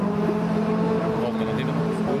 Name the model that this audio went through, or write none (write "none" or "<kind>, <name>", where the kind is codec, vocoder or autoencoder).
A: none